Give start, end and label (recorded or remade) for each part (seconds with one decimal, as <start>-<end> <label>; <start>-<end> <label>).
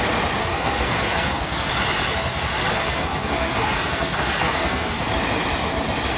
0.0-0.4 recorded; 0.4-1.7 remade; 1.7-2.7 recorded; 2.7-5.0 remade; 5.0-6.2 recorded